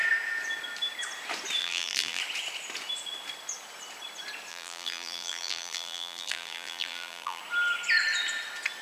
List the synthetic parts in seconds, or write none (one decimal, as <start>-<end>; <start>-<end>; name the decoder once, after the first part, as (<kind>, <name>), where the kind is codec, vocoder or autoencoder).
1.6-2.2 (vocoder, BigVGAN v2); 4.5-7.4